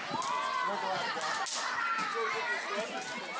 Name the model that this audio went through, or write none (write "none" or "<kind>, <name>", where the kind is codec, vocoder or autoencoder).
none